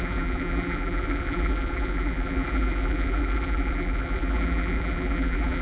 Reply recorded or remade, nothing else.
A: remade